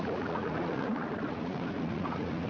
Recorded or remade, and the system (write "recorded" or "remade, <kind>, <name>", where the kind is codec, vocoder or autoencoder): remade, vocoder, Vocos